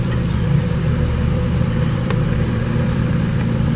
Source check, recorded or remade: remade